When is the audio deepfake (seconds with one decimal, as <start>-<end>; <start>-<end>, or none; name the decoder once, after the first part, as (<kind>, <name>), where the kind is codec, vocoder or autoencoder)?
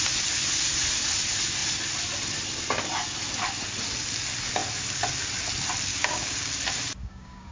5.9-6.5 (codec, DAC); 7.0-7.5